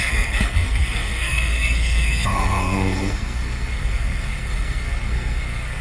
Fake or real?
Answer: fake